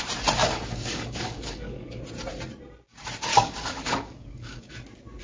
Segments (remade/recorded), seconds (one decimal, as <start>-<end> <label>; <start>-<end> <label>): 0.0-0.4 recorded; 0.4-2.0 remade; 2.0-3.3 recorded; 3.3-4.7 remade; 4.7-5.2 recorded